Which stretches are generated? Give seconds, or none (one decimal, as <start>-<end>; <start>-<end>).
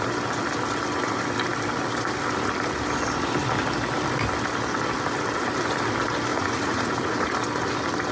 6.3-7.3